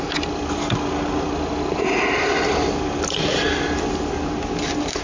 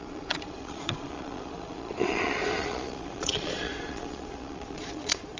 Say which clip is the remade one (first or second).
second